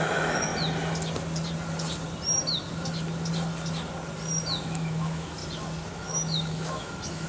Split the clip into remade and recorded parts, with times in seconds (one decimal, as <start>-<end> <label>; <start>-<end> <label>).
0.0-0.5 remade; 0.5-4.6 recorded; 4.6-5.4 remade; 5.4-5.9 recorded; 5.9-7.3 remade